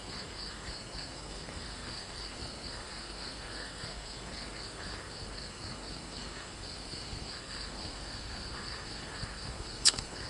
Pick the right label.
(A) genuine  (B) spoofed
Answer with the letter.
B